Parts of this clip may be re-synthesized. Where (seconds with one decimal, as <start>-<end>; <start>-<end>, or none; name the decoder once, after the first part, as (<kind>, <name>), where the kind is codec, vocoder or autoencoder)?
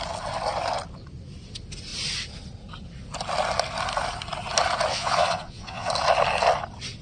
4.9-5.9 (vocoder, Vocos)